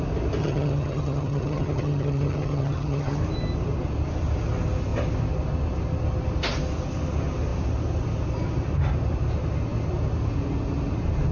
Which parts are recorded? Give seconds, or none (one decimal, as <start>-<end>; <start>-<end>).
0.0-0.4; 3.2-11.3